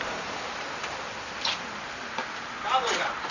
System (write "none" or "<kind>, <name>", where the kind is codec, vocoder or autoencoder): vocoder, BigVGAN v2